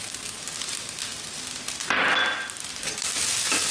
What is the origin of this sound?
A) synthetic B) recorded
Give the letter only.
B